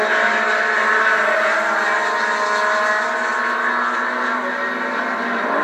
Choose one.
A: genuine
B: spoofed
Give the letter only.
A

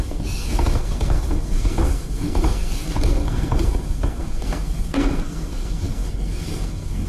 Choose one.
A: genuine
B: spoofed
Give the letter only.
B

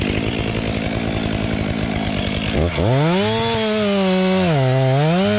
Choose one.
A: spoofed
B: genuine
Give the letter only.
B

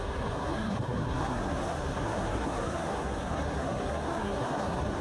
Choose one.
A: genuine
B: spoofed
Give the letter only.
B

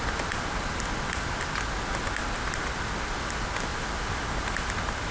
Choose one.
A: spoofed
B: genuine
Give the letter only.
B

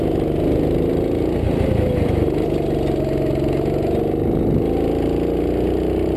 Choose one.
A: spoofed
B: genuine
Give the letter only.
B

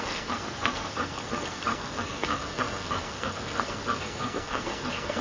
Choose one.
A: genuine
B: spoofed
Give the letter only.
B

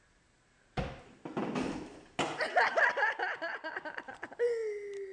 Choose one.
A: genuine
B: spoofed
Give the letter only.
A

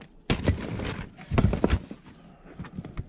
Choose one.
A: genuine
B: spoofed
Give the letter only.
A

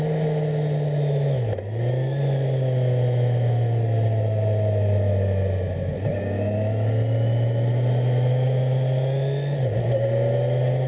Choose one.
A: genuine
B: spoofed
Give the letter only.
A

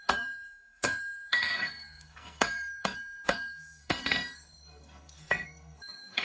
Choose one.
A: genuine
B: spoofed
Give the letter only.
B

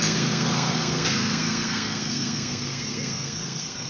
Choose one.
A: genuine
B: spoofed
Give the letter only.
B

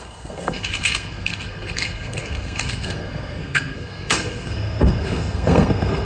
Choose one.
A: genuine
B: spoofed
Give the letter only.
B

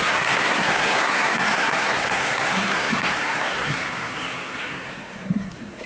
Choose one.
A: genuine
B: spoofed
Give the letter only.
B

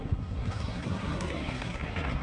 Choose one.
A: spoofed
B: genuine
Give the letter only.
A